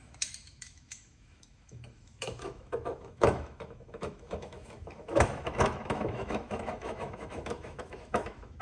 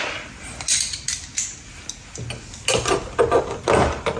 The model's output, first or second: first